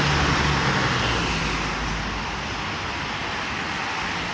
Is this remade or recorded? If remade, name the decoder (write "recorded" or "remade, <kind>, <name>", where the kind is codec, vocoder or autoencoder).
recorded